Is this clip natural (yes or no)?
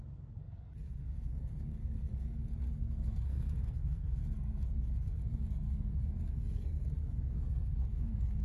no